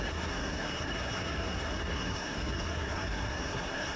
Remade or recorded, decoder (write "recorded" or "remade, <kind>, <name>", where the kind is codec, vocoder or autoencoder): remade, codec, SNAC